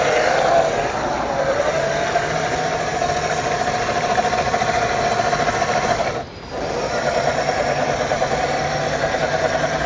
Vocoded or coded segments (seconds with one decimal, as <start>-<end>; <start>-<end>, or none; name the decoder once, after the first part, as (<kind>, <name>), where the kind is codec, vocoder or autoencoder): none